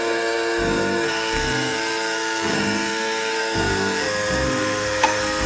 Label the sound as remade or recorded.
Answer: remade